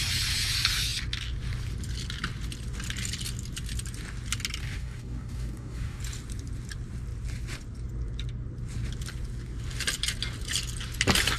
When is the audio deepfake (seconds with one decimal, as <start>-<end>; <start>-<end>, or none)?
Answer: 4.6-6.0